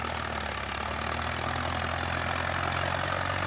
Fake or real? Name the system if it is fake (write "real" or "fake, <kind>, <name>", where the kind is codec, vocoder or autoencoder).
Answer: real